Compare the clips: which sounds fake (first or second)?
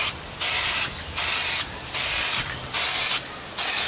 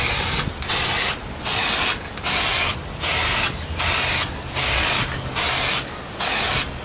first